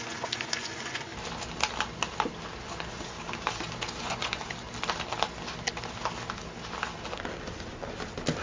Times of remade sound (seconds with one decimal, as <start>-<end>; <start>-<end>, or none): 0.0-1.1; 4.0-4.4